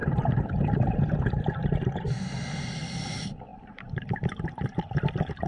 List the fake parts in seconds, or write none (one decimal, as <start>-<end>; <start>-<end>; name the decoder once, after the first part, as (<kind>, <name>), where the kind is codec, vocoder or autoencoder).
0.0-0.6 (vocoder, BigVGAN v2); 3.5-5.0